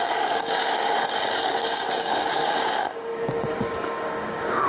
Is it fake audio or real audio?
fake